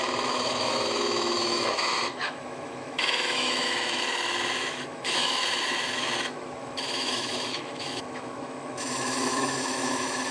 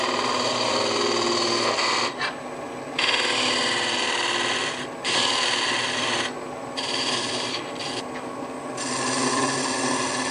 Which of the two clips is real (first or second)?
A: second